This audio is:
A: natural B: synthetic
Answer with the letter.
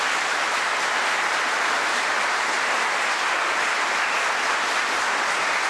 A